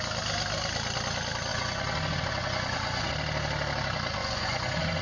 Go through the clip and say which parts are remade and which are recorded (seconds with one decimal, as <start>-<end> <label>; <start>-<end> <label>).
0.0-1.5 recorded; 1.5-3.1 remade; 3.1-4.2 recorded; 4.2-5.0 remade

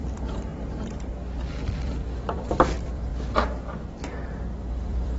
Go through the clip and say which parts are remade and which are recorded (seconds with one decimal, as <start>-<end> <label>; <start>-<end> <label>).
0.0-0.5 remade; 0.5-1.5 recorded; 1.5-3.1 remade; 3.1-4.7 recorded; 4.7-5.2 remade

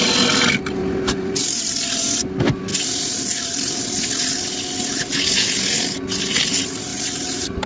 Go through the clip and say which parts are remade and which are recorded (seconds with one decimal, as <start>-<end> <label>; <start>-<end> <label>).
0.0-0.8 recorded; 0.8-1.9 remade; 1.9-2.7 recorded; 2.7-3.8 remade; 3.8-6.9 recorded; 6.9-7.7 remade

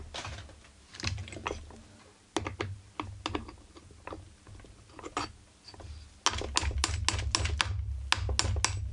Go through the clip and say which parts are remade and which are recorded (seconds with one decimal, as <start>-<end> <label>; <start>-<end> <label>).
0.0-8.9 recorded

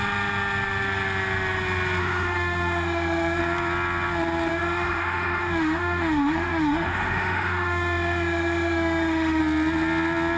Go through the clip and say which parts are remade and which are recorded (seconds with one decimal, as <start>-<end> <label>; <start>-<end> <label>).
0.0-2.0 recorded; 2.0-3.4 remade; 3.4-4.5 recorded; 4.5-9.4 remade; 9.4-10.4 recorded

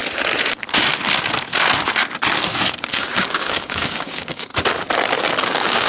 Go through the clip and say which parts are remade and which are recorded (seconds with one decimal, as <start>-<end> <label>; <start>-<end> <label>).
0.0-2.9 recorded; 2.9-4.5 remade; 4.5-5.4 recorded; 5.4-5.9 remade